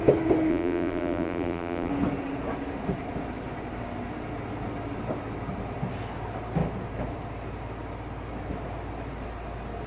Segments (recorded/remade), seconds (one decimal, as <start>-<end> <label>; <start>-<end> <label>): 0.0-0.5 recorded; 0.5-1.9 remade; 1.9-9.9 recorded